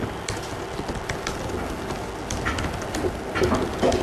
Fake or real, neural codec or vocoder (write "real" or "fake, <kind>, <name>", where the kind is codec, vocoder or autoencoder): real